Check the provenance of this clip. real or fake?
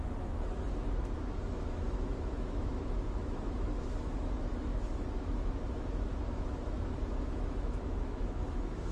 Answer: fake